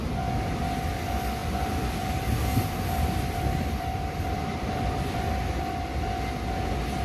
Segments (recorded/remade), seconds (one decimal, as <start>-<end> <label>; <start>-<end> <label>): 0.0-1.4 recorded; 1.4-5.6 remade; 5.6-7.0 recorded